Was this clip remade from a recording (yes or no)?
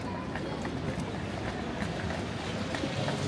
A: no